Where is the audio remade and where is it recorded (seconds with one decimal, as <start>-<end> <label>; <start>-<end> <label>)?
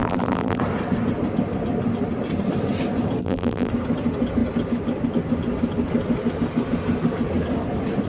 0.0-0.6 remade; 0.6-3.2 recorded; 3.2-3.7 remade; 3.7-8.1 recorded